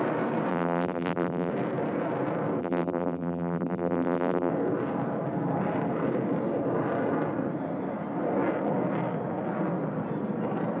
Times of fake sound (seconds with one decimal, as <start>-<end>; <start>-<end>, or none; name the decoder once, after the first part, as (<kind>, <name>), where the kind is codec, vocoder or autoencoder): 0.5-1.5 (vocoder, BigVGAN v2); 2.6-4.5